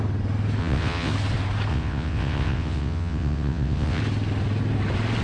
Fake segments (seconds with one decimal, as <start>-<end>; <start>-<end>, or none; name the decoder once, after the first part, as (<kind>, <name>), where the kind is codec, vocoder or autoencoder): 0.6-1.1 (vocoder, WaveNeXt); 1.7-4.0